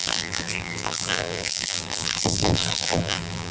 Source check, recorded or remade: remade